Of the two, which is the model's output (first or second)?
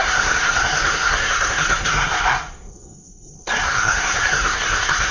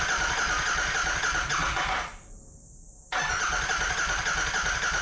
first